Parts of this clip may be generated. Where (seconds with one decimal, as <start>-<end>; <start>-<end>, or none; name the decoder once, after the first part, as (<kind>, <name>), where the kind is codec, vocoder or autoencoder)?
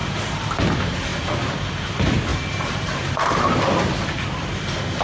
0.0-0.5 (vocoder, BigVGAN v2); 2.3-3.2